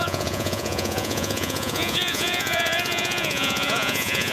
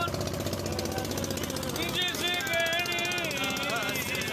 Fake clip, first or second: first